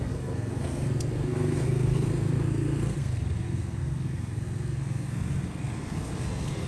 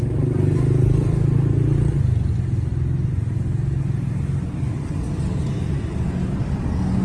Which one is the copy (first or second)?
first